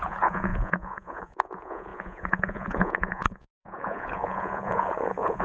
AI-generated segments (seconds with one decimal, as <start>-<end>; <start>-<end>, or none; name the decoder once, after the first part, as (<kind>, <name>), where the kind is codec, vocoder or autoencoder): 0.0-5.4 (vocoder, Vocos)